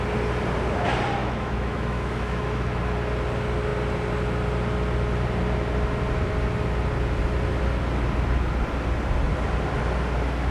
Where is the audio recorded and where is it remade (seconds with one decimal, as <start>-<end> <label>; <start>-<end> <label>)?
0.0-1.2 recorded; 1.2-2.8 remade; 2.8-10.5 recorded